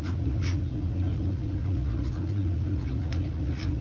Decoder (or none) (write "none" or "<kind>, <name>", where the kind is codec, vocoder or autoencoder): vocoder, Vocos